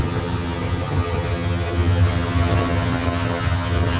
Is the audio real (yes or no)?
no